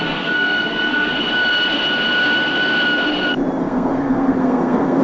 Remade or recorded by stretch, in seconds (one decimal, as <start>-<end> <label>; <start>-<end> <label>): 0.0-1.1 remade; 1.1-3.6 recorded; 3.6-5.0 remade